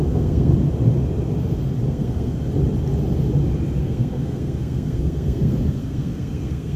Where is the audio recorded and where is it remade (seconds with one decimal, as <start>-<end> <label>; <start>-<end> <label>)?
0.0-0.5 remade; 0.5-1.9 recorded; 1.9-2.4 remade; 2.4-3.8 recorded; 3.8-6.8 remade